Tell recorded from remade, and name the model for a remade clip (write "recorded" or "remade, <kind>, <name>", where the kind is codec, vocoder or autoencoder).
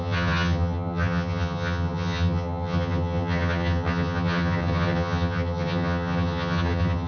remade, vocoder, HiFi-GAN